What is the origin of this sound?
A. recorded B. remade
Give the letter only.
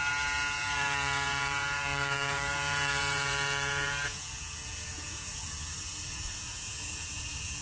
B